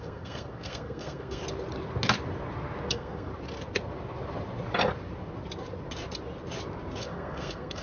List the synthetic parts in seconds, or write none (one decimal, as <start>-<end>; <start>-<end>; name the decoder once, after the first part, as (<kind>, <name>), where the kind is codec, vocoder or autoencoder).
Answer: 0.0-1.4 (codec, SNAC); 2.9-3.3; 7.0-7.8